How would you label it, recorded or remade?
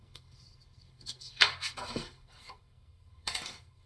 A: remade